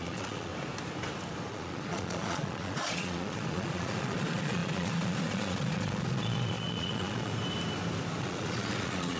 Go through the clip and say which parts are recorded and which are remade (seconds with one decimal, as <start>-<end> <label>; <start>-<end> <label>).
0.0-0.5 remade; 0.5-1.5 recorded; 1.5-7.3 remade; 7.3-8.2 recorded; 8.2-9.2 remade